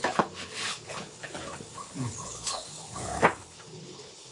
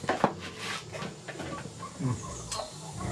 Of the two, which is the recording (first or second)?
second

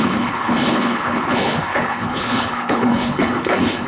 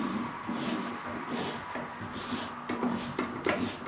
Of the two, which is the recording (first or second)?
second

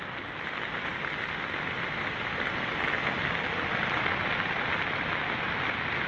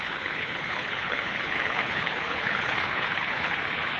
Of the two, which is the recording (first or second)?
first